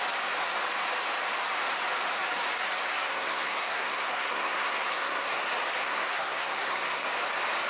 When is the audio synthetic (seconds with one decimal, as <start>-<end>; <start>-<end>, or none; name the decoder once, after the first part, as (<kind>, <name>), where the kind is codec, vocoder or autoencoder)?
2.9-5.3 (codec, SNAC); 5.8-7.1